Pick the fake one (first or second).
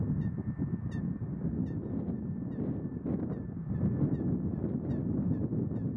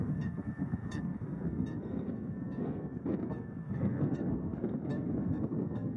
second